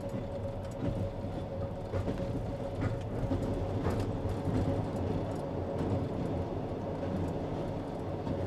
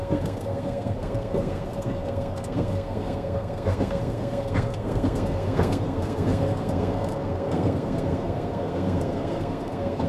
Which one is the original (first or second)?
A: first